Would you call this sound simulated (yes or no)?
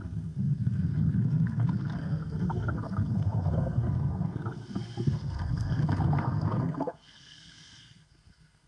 yes